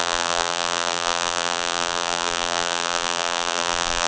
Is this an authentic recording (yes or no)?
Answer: no